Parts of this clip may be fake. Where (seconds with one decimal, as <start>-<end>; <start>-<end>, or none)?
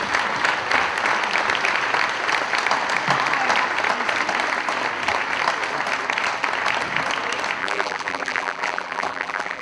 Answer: 7.6-9.6